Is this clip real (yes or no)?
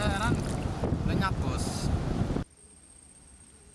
no